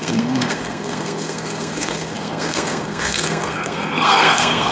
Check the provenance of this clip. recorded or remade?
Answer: remade